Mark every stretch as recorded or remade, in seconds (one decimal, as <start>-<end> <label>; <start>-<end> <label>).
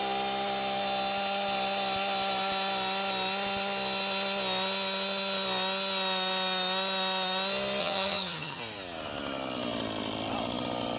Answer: 0.0-7.8 recorded; 7.8-8.6 remade; 8.6-11.0 recorded